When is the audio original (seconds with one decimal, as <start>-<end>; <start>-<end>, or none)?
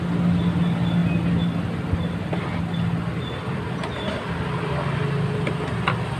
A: 0.0-6.2